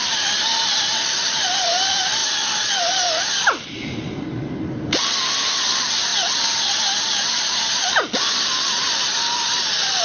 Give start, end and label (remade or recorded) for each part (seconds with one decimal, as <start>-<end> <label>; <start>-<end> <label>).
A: 0.0-6.1 remade; 6.1-7.0 recorded; 7.0-10.0 remade